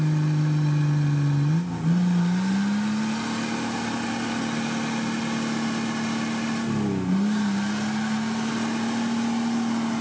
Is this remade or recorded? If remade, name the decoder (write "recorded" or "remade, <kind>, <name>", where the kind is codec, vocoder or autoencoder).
recorded